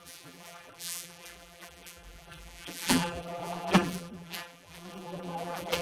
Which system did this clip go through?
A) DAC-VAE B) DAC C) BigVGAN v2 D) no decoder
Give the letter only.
C